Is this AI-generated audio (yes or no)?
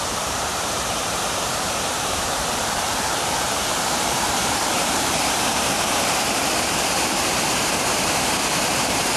yes